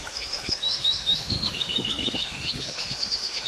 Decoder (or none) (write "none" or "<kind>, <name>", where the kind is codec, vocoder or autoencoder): autoencoder, DAC-VAE